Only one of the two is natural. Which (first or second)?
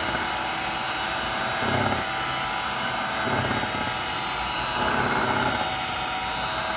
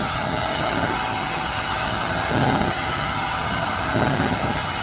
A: first